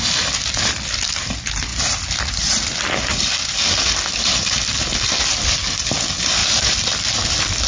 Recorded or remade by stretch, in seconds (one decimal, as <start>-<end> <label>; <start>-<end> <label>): 0.0-6.4 recorded; 6.4-7.3 remade; 7.3-7.7 recorded